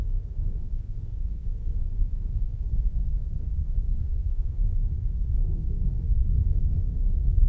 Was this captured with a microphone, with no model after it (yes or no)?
no